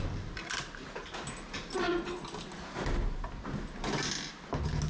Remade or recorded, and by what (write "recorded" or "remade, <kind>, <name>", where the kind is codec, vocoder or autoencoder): recorded